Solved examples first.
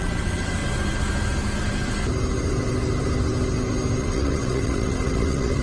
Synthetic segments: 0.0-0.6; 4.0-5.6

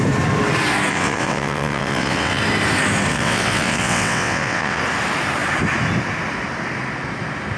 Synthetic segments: 0.9-2.4; 3.1-4.8

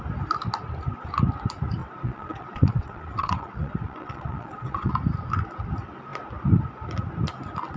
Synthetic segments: 1.8-4.9

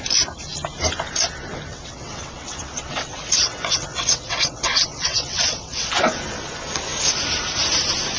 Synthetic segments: 1.7-5.9